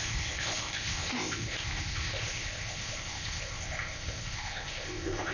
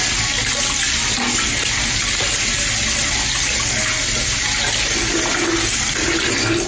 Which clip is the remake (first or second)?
first